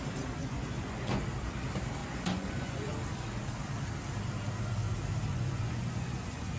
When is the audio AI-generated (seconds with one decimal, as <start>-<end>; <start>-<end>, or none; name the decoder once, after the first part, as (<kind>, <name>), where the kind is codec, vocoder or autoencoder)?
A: 0.4-1.2 (vocoder, Vocos); 2.0-2.9; 5.3-6.6